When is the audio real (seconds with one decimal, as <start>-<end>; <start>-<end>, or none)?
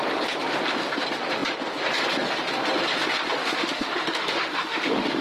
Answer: 0.0-3.4